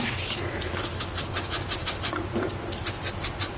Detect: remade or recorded recorded